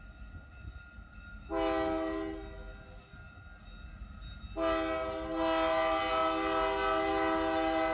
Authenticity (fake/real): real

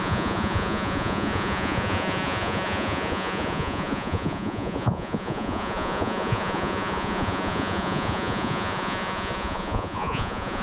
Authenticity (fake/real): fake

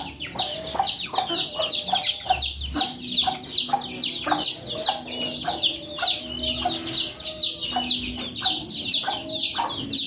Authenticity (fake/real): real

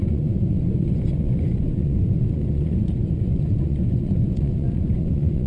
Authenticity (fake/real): fake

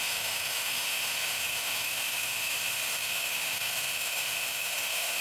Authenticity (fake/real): fake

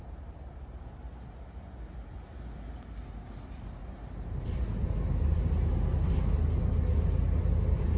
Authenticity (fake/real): real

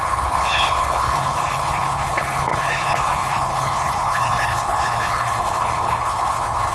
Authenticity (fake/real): fake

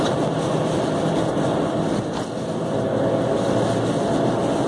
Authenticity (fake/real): real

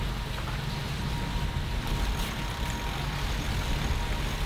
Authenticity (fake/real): real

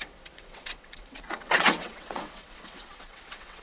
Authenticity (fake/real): fake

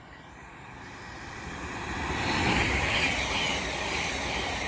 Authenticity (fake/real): fake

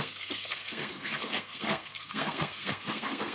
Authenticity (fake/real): fake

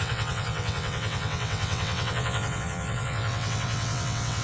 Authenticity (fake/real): fake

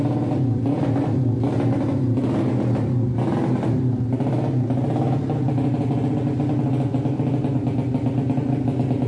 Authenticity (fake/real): real